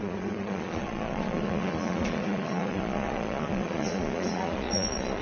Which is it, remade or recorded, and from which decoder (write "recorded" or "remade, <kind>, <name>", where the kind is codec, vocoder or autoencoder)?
remade, vocoder, Vocos